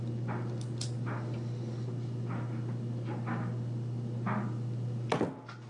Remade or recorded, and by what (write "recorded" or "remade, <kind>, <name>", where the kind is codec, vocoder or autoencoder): recorded